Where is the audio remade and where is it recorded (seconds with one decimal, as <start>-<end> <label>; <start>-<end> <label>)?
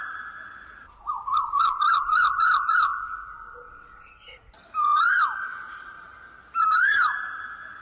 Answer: 0.0-7.8 recorded